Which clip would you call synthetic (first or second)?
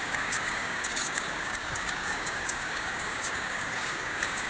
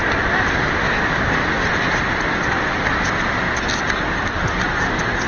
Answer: first